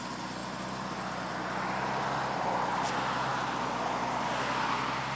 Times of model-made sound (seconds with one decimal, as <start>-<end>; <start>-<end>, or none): none